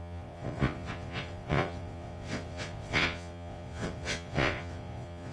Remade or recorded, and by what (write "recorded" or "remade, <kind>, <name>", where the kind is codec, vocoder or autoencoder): remade, vocoder, Vocos